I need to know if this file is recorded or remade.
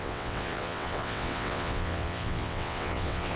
remade